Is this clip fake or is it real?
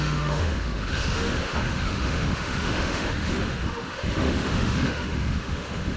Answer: fake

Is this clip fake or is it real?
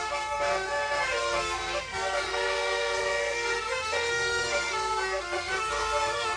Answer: fake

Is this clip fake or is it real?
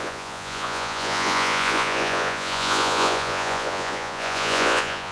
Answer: fake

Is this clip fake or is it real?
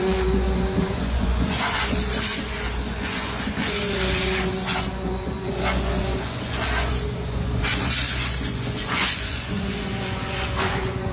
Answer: fake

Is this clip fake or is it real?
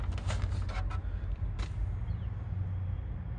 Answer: real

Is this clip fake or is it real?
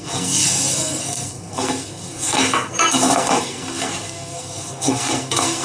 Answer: fake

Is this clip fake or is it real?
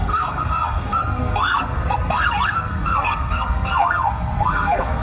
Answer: fake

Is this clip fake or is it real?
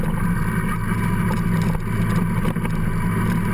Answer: real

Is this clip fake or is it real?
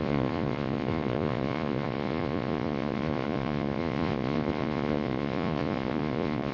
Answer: fake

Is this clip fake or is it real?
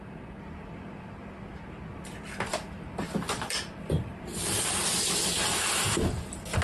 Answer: fake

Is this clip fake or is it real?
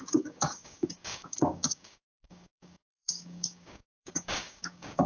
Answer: fake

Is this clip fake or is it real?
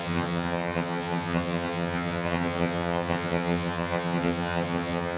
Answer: fake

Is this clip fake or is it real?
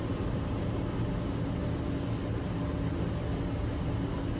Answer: real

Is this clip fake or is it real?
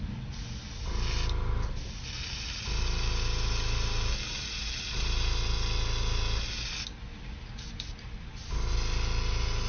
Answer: real